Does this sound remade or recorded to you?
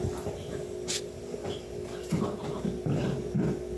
recorded